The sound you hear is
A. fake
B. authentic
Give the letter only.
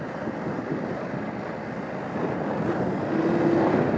B